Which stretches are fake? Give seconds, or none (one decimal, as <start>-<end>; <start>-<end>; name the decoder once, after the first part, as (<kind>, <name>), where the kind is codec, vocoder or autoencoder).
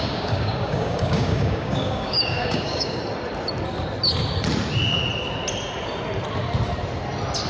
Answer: 0.0-3.0 (codec, DAC)